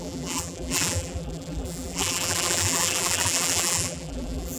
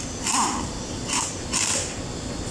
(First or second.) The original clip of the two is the second